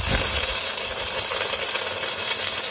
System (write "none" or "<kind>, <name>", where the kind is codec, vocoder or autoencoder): vocoder, BigVGAN v2